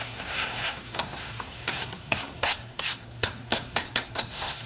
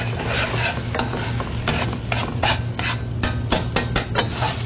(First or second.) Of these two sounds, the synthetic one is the first